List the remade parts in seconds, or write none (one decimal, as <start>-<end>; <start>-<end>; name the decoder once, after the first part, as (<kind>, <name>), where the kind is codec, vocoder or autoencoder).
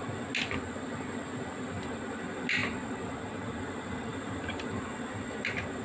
4.1-4.7 (vocoder, BigVGAN v2)